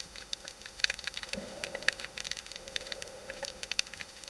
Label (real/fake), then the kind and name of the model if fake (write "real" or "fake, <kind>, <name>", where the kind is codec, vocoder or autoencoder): fake, autoencoder, DAC-VAE